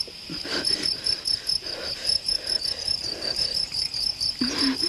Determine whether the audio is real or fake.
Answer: fake